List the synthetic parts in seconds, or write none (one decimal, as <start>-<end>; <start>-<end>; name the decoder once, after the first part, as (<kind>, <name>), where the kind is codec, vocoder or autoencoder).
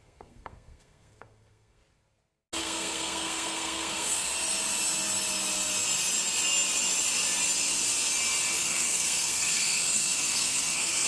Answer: 0.0-1.8 (codec, SNAC); 2.6-4.3; 8.6-11.1